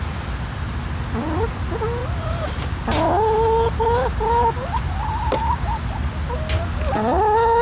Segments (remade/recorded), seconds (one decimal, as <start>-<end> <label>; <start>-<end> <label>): 0.0-7.6 recorded

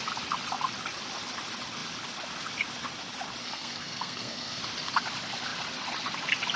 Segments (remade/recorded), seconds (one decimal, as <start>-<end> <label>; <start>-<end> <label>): 0.0-3.4 recorded; 3.4-4.6 remade; 4.6-6.6 recorded

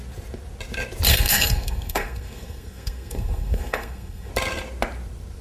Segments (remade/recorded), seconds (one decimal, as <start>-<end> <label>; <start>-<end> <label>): 0.0-1.1 recorded; 1.1-4.3 remade; 4.3-5.4 recorded

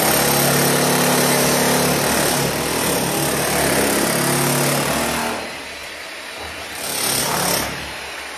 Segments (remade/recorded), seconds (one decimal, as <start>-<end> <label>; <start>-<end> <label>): 0.0-8.4 recorded

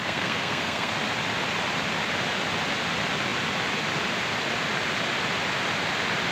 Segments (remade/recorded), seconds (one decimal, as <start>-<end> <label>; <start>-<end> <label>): 0.0-0.9 remade; 0.9-6.3 recorded

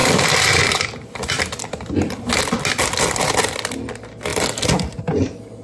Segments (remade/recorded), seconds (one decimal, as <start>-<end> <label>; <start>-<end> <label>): 0.0-5.6 recorded

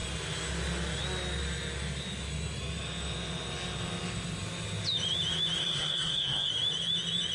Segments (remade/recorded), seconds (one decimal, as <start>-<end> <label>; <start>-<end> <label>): 0.0-5.6 recorded; 5.6-6.5 remade; 6.5-7.3 recorded

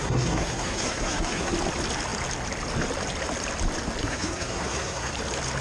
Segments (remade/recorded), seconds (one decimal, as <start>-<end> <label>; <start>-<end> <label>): 0.0-1.5 remade; 1.5-4.0 recorded; 4.0-5.1 remade; 5.1-5.6 recorded